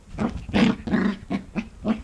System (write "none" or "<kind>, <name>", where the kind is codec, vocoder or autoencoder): none